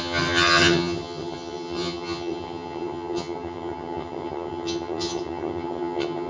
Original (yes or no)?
no